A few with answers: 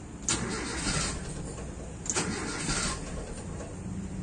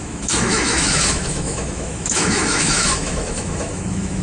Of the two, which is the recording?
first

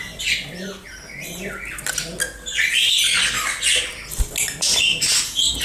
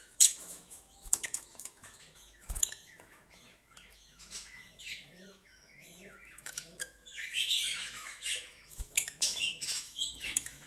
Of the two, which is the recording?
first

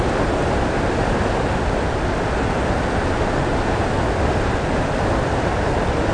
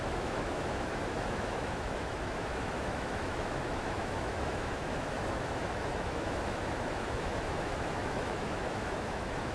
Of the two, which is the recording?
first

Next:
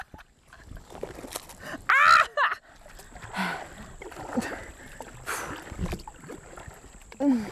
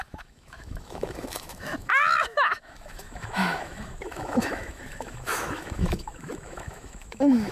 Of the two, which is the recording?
first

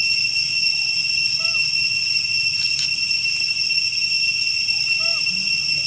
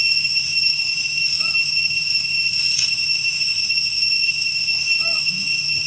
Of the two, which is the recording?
first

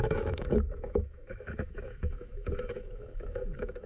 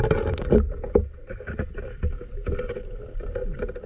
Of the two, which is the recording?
second